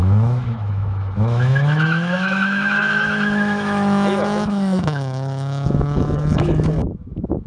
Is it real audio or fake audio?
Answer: fake